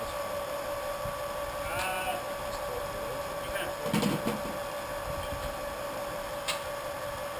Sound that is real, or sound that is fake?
real